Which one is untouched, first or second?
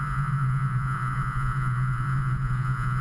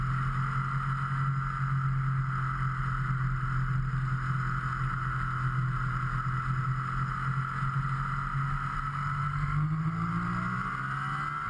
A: second